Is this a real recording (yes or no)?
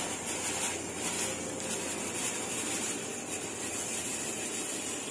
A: yes